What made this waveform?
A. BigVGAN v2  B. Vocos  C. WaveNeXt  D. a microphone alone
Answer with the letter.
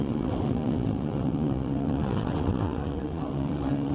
C